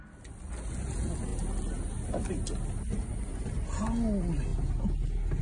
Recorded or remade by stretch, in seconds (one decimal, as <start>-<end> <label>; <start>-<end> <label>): 0.0-5.4 recorded